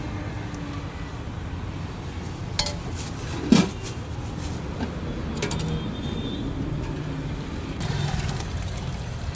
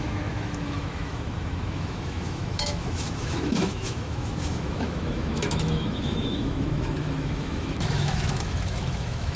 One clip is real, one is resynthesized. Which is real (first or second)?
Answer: first